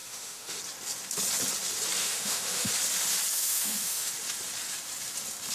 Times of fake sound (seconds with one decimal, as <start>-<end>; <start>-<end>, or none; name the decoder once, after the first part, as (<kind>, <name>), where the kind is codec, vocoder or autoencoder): 0.0-0.6 (autoencoder, DAC-VAE); 2.0-2.7; 3.3-4.1